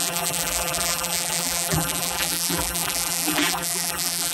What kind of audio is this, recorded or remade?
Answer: remade